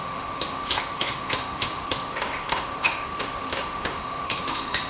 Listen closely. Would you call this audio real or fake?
fake